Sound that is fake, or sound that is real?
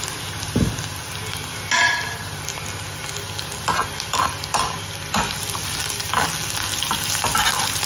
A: real